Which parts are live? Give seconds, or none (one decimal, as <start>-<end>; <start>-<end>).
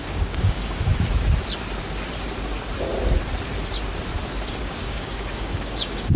0.9-4.6